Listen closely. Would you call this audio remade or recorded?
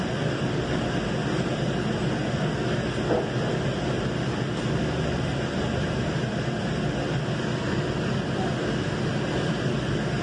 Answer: recorded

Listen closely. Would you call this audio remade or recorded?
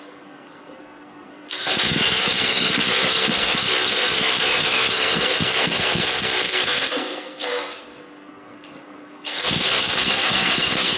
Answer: remade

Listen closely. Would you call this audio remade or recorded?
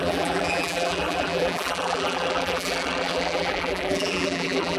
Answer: remade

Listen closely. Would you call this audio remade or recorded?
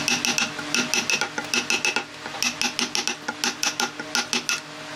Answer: recorded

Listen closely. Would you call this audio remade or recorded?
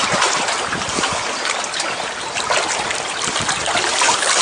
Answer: recorded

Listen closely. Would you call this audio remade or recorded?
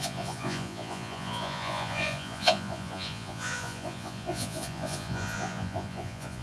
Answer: remade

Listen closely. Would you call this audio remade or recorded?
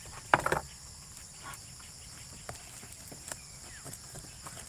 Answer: recorded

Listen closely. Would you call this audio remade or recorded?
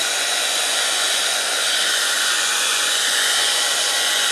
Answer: remade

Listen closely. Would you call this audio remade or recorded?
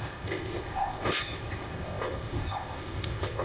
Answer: remade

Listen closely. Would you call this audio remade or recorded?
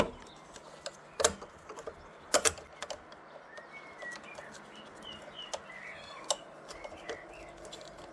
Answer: recorded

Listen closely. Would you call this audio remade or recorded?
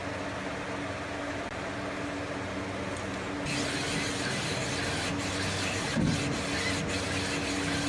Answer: recorded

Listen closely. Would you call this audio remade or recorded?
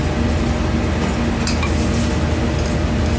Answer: recorded